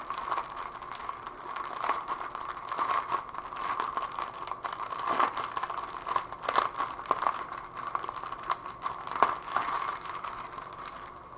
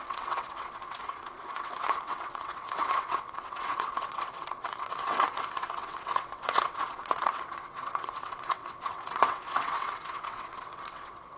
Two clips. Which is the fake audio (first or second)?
second